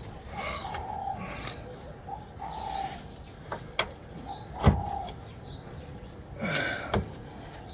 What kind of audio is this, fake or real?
real